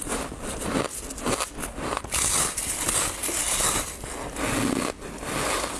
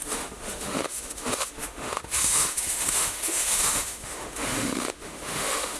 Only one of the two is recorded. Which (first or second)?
first